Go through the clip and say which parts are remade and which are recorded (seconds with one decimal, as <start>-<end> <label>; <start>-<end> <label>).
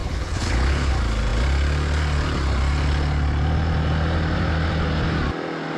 0.0-0.9 remade; 0.9-5.8 recorded